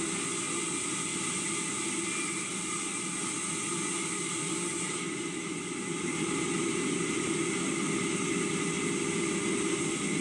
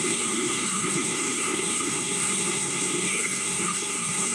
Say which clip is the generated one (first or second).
second